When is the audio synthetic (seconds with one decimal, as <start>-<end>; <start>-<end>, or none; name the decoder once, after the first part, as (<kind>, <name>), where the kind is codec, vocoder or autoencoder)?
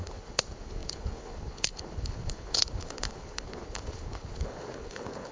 0.0-5.3 (codec, HILCodec)